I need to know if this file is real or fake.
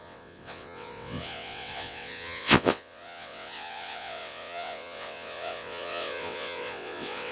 fake